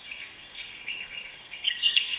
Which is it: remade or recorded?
remade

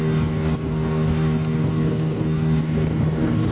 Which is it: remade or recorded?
remade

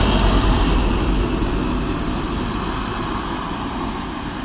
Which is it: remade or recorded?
recorded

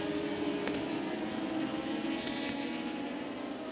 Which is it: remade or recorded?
recorded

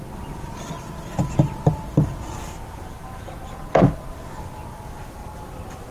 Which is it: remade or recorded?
recorded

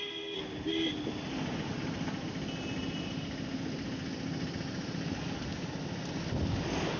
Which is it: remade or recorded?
recorded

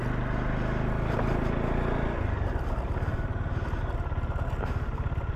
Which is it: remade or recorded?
recorded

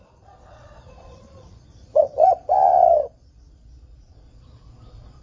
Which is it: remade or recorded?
remade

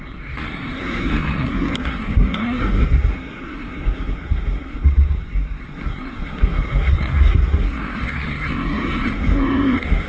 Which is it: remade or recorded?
remade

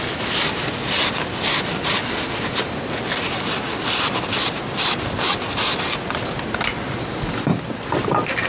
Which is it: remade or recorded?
recorded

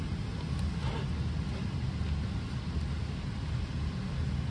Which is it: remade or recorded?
recorded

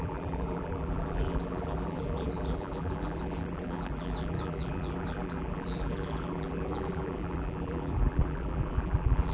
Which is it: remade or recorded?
remade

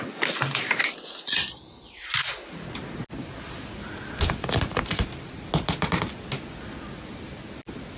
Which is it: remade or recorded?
recorded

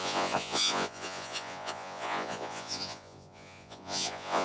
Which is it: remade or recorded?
remade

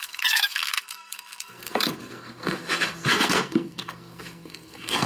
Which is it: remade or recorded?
remade